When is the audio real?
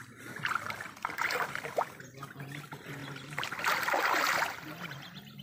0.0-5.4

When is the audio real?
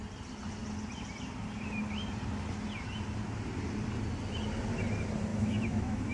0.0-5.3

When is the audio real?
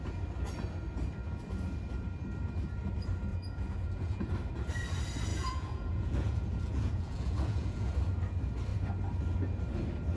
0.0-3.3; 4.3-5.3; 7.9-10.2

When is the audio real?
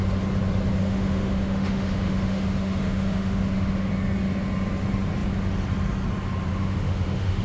0.0-0.8; 3.9-6.5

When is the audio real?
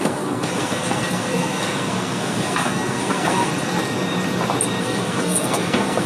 3.5-4.8